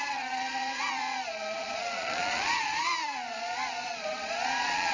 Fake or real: fake